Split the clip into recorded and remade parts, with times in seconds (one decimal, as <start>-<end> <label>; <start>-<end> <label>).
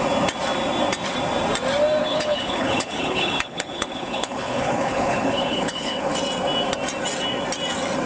0.0-2.0 recorded; 2.0-6.1 remade; 6.1-8.1 recorded